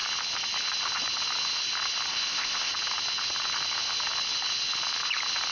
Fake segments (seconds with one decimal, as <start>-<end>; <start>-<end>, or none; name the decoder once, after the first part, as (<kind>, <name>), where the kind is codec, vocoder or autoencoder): 2.1-2.7 (codec, ZipCodec)